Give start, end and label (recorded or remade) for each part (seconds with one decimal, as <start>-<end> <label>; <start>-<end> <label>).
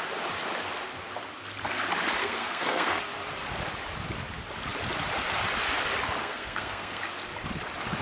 0.0-2.2 recorded; 2.2-3.0 remade; 3.0-6.2 recorded; 6.2-7.0 remade; 7.0-8.0 recorded